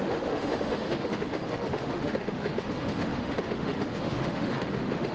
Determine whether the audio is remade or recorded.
remade